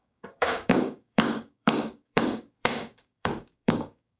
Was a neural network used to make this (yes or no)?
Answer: yes